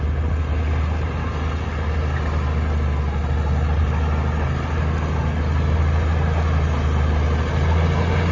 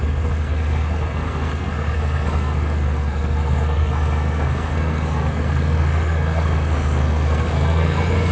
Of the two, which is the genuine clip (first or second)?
first